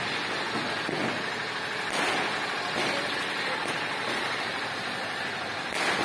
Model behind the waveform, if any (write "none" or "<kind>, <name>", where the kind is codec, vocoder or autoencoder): none